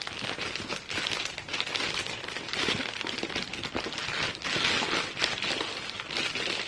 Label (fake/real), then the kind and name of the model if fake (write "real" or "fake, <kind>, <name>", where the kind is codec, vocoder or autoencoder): real